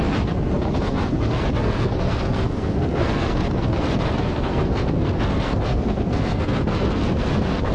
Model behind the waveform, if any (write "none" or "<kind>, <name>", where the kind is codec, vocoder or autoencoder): codec, SNAC